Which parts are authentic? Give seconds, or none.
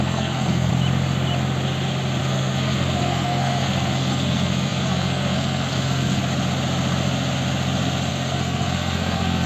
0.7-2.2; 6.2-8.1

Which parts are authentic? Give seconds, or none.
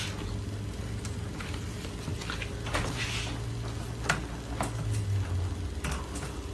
0.0-6.5